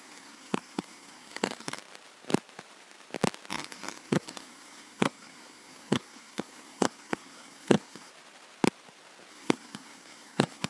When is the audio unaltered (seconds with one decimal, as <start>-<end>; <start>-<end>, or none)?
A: 1.8-3.5; 8.1-9.3